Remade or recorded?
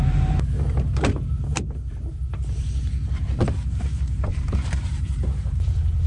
remade